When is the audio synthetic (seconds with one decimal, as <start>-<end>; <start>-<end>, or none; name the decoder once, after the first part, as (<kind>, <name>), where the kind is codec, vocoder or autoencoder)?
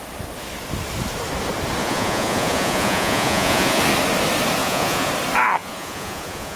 1.8-3.8 (vocoder, Vocos); 4.6-5.1; 5.6-6.6